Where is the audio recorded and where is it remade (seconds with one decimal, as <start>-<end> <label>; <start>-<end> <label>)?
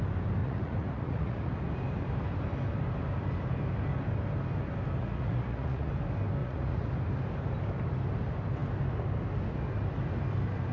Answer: 0.0-0.4 recorded; 0.4-1.5 remade; 1.5-5.0 recorded; 5.0-5.9 remade; 5.9-6.4 recorded; 6.4-6.9 remade; 6.9-10.7 recorded